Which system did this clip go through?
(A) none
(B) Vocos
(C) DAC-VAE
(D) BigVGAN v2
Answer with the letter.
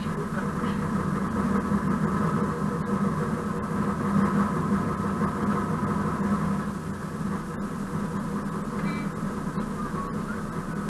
A